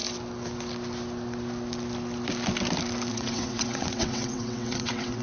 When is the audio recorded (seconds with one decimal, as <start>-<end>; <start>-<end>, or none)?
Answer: 0.0-3.1

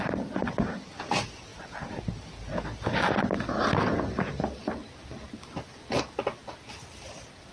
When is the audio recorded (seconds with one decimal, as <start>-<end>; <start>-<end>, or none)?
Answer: 0.0-7.5

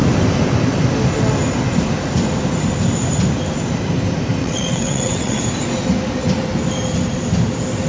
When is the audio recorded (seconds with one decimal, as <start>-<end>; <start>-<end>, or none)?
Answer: 0.0-4.4; 5.4-7.9

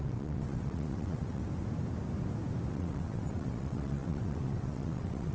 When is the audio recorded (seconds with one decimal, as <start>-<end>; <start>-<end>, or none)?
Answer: 1.4-2.7

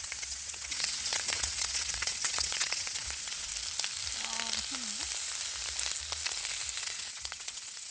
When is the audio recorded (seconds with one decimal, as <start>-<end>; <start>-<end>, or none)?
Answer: 3.5-6.8

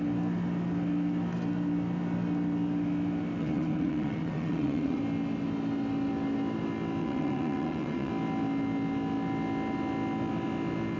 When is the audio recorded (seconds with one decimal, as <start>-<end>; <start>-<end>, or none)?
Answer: 0.0-3.4; 5.0-7.0; 8.1-11.0